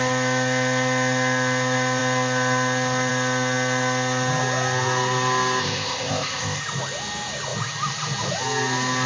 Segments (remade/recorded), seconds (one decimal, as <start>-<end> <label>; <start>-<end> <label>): 0.0-5.6 recorded; 5.6-6.6 remade; 6.6-9.1 recorded